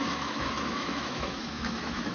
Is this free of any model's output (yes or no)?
no